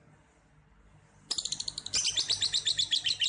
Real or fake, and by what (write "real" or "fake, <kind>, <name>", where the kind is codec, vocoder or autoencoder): real